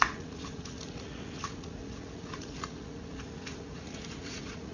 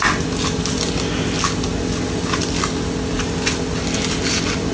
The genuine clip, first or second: second